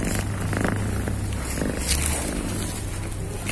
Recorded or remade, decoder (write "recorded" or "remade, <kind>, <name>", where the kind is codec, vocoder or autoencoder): recorded